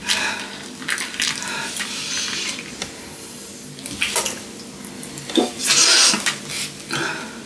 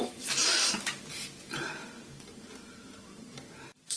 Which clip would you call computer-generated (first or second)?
second